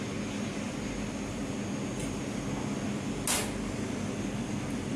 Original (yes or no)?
yes